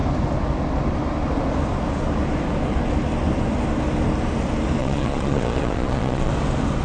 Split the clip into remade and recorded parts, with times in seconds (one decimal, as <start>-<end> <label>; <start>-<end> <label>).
0.0-4.8 recorded; 4.8-6.3 remade; 6.3-6.8 recorded